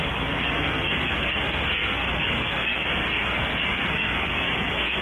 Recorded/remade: remade